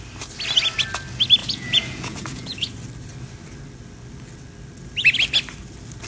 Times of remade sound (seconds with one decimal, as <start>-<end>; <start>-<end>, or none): 1.4-2.7